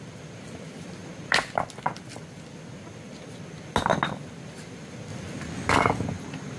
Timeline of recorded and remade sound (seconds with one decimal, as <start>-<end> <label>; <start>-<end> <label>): 0.0-6.6 recorded